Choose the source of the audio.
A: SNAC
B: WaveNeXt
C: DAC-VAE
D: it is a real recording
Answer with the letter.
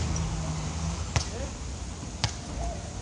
D